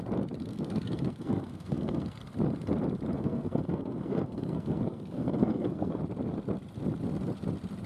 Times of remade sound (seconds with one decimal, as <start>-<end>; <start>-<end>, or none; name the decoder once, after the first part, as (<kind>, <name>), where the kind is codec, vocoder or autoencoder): 0.5-2.2 (codec, SNAC); 3.1-6.0